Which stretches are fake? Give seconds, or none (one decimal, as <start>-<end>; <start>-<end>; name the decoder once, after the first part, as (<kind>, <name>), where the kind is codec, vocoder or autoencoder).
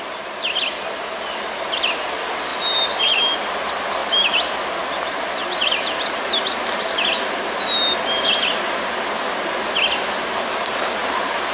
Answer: none